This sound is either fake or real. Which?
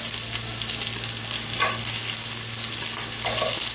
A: real